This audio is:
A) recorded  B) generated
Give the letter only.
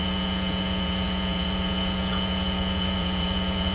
B